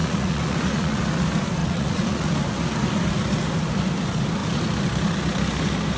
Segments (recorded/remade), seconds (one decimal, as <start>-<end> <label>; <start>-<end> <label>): 0.0-1.0 remade; 1.0-1.6 recorded; 1.6-2.3 remade; 2.3-6.0 recorded